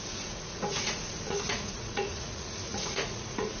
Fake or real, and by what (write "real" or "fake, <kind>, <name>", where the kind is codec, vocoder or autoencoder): fake, vocoder, Vocos